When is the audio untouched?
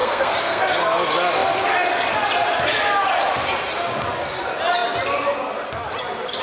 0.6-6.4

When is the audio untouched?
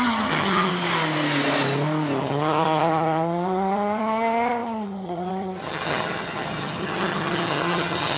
0.7-2.2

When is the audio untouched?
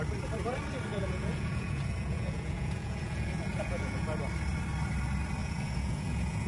0.0-0.9; 4.2-5.4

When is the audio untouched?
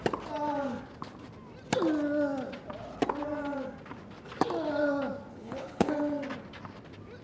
0.0-5.3; 5.9-7.2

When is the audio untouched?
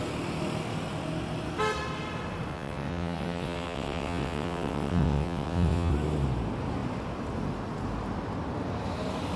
0.0-2.5; 5.9-9.4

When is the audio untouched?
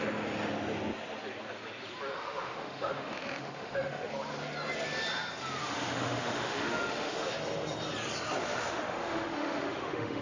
0.0-2.1; 4.1-5.6; 7.3-8.4